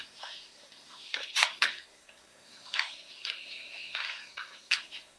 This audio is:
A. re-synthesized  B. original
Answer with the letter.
A